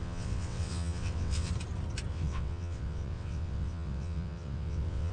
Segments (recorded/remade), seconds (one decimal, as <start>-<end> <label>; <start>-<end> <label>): 0.0-1.5 remade; 1.5-2.1 recorded; 2.1-5.1 remade